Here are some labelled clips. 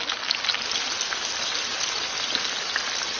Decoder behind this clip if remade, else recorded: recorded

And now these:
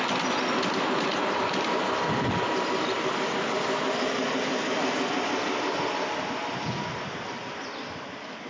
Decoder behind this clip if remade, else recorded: recorded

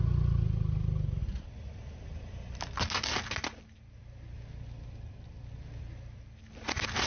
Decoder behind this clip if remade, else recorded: recorded